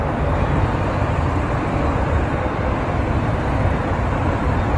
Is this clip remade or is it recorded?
remade